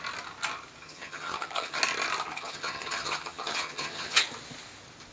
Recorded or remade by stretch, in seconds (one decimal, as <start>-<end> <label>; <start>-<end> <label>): 0.0-0.8 recorded; 0.8-1.8 remade; 1.8-2.3 recorded; 2.3-4.2 remade; 4.2-5.1 recorded